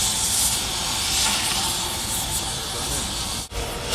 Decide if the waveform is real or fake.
fake